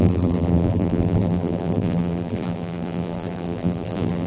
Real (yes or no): no